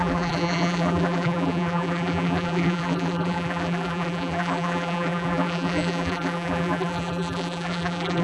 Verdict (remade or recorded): remade